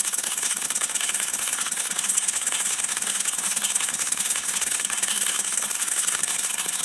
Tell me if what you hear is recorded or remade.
remade